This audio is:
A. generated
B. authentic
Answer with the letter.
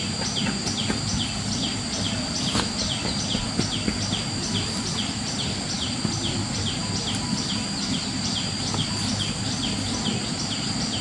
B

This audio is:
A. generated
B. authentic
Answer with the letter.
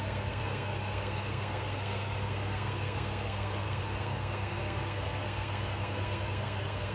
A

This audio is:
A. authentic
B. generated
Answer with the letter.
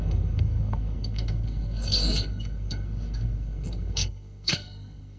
B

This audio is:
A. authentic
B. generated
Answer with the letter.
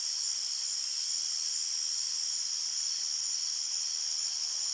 A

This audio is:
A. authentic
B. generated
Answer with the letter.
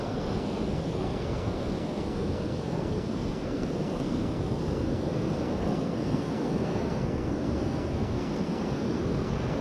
B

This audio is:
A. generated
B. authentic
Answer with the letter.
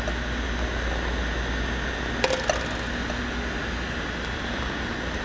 B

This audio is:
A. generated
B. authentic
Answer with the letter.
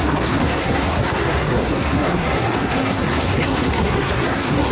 A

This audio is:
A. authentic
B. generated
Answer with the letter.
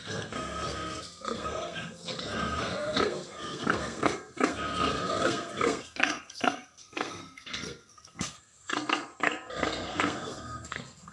B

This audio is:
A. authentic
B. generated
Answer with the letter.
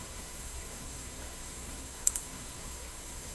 B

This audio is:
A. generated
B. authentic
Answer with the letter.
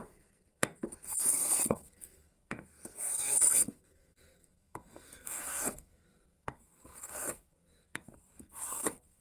A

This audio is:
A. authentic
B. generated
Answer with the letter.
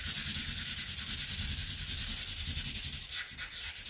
A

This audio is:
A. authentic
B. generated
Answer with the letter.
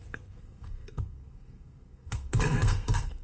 B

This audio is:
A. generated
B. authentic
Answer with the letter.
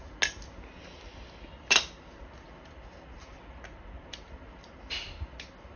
B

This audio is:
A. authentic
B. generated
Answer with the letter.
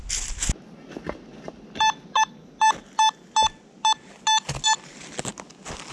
A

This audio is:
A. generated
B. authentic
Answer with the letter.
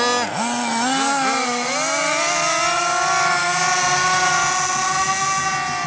B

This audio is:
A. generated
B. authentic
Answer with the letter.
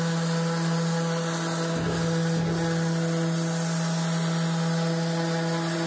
B